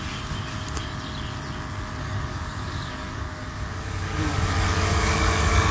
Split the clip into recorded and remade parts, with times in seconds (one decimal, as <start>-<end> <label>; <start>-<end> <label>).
0.0-2.0 recorded; 2.0-5.7 remade